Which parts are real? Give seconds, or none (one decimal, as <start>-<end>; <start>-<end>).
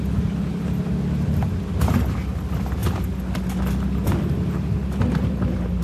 0.0-5.8